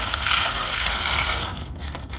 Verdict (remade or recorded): remade